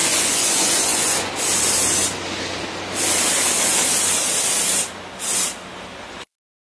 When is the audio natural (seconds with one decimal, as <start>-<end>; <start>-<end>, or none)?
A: 1.3-6.6